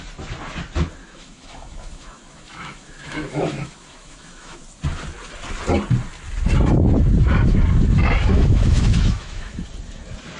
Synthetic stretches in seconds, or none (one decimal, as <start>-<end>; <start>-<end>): 1.0-4.6; 8.3-9.6